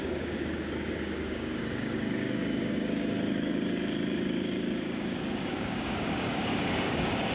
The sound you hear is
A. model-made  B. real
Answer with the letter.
A